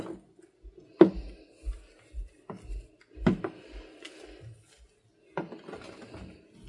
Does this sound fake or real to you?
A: real